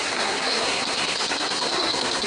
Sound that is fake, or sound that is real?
fake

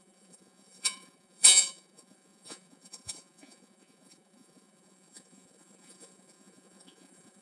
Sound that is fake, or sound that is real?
fake